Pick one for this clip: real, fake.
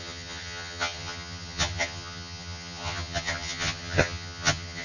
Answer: fake